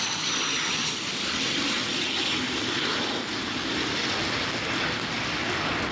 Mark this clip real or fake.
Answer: real